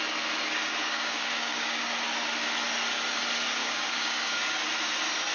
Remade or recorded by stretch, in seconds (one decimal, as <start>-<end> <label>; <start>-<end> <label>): 0.0-0.6 recorded; 0.6-1.8 remade; 1.8-3.6 recorded; 3.6-4.4 remade; 4.4-5.3 recorded